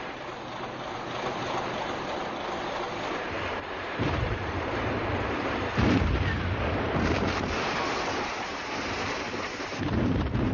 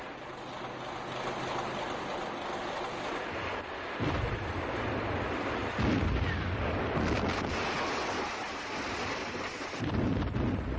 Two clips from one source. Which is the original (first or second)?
second